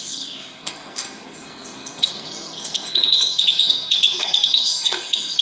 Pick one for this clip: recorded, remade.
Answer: remade